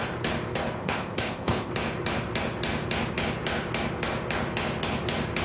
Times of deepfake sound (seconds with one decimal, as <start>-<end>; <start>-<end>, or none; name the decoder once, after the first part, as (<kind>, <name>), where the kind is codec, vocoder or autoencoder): 0.8-1.7 (codec, ZipCodec)

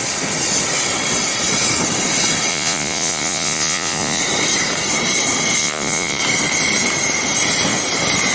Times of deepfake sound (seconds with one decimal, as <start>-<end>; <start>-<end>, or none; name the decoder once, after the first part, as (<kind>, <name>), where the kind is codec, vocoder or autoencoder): 2.5-4.2 (vocoder, Vocos); 5.6-6.2

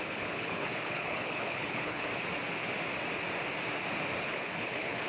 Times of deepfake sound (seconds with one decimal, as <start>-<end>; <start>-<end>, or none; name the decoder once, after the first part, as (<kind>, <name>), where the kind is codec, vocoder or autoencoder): 0.0-2.1 (codec, HILCodec); 4.2-5.1

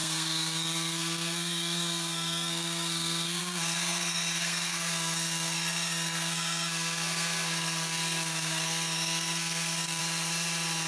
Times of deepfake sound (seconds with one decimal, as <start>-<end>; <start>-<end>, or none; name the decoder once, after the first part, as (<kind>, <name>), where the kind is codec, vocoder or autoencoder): 0.0-10.0 (codec, SNAC)

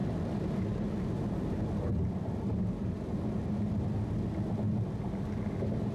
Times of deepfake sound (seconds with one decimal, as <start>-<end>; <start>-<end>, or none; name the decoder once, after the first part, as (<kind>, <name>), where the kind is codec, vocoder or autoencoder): none

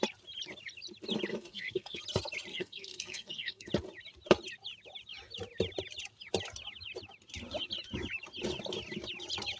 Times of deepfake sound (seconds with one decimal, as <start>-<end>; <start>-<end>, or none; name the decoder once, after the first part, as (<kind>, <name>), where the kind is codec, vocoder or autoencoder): 1.3-2.0 (codec, SNAC); 2.5-3.7

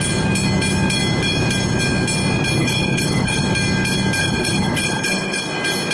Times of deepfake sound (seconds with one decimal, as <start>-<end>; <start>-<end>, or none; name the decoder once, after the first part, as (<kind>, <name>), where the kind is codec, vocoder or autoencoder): 2.6-3.4 (codec, HILCodec); 4.2-5.4

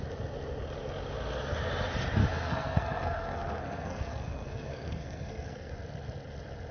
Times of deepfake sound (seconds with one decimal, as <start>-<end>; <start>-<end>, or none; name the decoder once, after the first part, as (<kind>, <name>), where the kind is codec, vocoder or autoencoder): 2.2-5.7 (codec, SNAC)